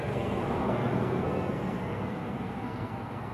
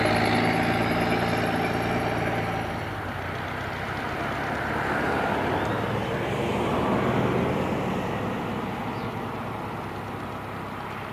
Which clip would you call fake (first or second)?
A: first